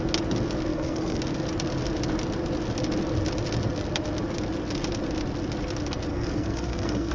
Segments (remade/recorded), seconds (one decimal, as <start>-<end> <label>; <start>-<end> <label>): 0.0-0.7 recorded; 0.7-1.2 remade; 1.2-6.1 recorded; 6.1-7.1 remade